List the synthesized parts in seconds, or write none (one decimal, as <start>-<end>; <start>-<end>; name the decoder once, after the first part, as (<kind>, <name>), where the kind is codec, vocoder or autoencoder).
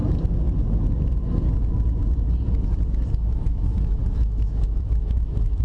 3.1-5.6 (autoencoder, DAC-VAE)